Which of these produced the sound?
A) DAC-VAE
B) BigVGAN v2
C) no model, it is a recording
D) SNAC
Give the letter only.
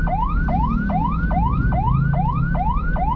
C